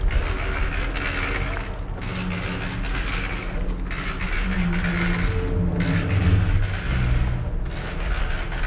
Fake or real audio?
real